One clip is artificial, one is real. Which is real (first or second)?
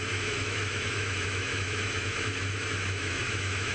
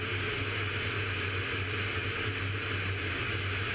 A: second